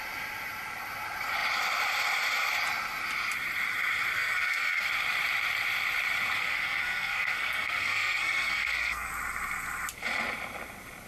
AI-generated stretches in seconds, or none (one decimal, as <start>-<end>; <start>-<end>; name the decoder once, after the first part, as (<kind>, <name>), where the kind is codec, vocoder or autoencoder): 4.1-4.9 (codec, SNAC); 6.4-9.1